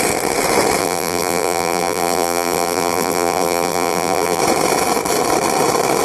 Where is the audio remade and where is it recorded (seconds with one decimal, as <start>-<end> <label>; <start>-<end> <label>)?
0.0-0.8 recorded; 0.8-4.4 remade; 4.4-6.0 recorded